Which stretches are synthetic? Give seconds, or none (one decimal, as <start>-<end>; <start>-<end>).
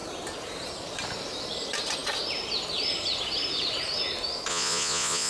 4.5-5.3